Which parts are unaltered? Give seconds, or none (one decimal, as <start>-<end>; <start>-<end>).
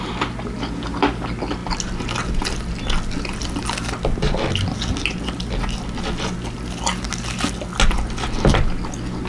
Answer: 0.0-9.3